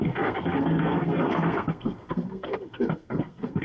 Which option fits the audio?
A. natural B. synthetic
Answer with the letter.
B